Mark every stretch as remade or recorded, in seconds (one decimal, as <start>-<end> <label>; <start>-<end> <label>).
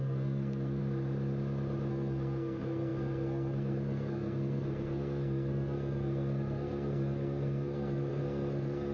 0.0-0.8 remade; 0.8-1.9 recorded; 1.9-8.9 remade